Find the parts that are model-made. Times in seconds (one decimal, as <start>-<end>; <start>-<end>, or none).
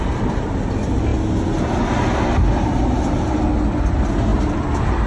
none